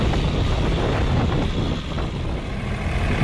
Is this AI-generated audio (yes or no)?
no